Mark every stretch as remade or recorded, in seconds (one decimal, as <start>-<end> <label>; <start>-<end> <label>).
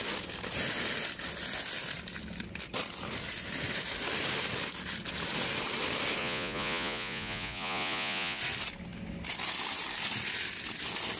0.0-6.2 recorded; 6.2-8.4 remade; 8.4-11.2 recorded